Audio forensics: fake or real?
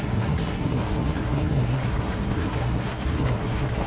fake